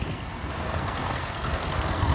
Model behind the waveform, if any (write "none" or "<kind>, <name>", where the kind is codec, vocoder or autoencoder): codec, SNAC